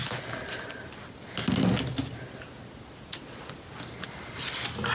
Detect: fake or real real